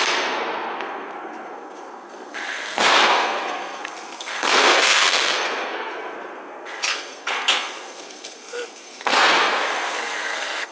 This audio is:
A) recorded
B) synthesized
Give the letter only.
B